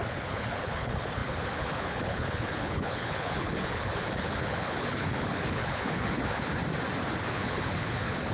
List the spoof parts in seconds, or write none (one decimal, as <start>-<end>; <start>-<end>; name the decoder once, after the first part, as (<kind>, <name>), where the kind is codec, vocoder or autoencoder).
0.0-6.6 (codec, HILCodec); 7.1-8.3